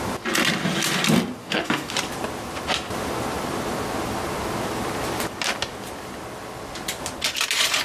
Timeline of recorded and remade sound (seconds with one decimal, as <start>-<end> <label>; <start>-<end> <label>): 0.0-1.4 recorded; 1.4-1.9 remade; 1.9-7.8 recorded